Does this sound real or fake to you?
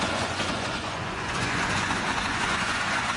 fake